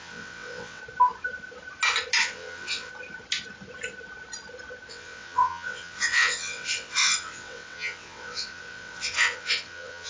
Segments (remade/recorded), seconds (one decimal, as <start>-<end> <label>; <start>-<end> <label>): 0.0-0.8 remade; 0.8-2.2 recorded; 2.2-2.9 remade; 2.9-4.9 recorded; 4.9-10.1 remade